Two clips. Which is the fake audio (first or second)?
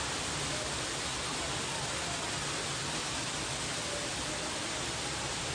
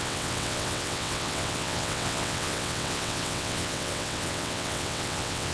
second